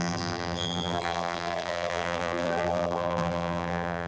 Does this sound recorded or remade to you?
remade